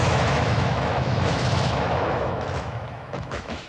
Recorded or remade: remade